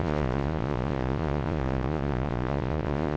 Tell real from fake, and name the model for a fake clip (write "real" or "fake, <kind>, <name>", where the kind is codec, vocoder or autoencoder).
fake, vocoder, Vocos